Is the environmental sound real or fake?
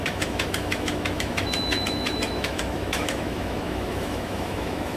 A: fake